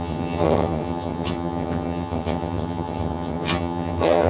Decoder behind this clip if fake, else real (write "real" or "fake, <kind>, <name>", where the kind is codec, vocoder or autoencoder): fake, vocoder, HiFi-GAN